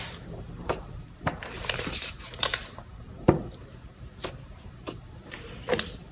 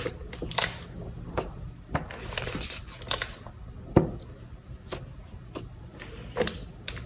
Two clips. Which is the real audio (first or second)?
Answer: second